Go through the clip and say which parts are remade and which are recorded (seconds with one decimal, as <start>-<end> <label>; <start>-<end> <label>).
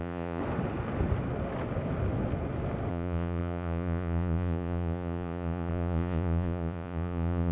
0.0-0.4 remade; 0.4-2.9 recorded; 2.9-7.5 remade